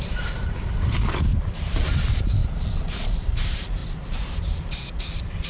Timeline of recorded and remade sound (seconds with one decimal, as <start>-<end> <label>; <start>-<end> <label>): 0.0-2.4 remade; 2.4-3.0 recorded; 3.0-3.8 remade; 3.8-4.9 recorded; 4.9-5.5 remade